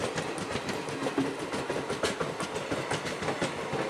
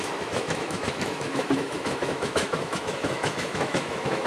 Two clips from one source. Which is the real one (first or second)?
first